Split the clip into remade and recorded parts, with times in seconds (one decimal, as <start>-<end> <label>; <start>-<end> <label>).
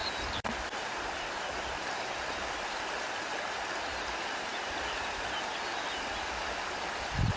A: 0.0-7.4 recorded